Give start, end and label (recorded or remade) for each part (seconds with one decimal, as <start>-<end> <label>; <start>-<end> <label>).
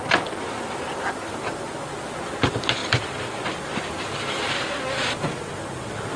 0.0-6.2 recorded